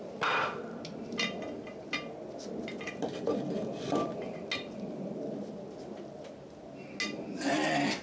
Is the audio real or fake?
real